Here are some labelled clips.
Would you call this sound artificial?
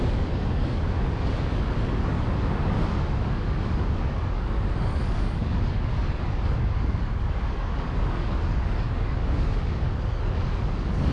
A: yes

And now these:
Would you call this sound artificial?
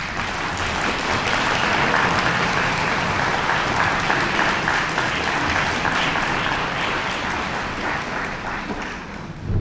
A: no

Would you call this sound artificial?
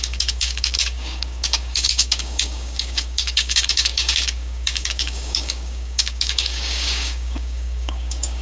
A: yes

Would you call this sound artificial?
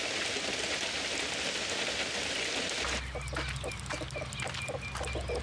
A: no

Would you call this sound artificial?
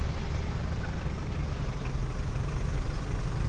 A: no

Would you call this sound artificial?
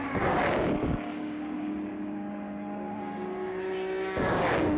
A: yes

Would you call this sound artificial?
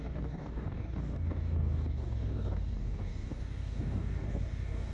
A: yes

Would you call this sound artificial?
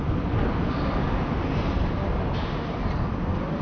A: no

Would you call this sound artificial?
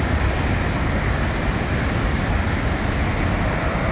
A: no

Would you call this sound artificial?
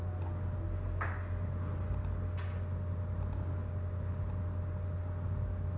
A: no